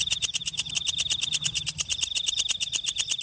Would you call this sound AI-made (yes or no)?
no